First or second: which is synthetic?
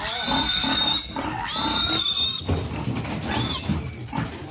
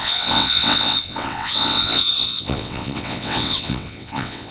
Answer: second